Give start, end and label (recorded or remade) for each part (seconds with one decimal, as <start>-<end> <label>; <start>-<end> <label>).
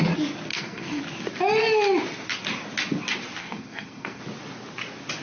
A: 0.0-0.5 recorded; 0.5-1.0 remade; 1.0-3.4 recorded; 3.4-4.2 remade; 4.2-5.2 recorded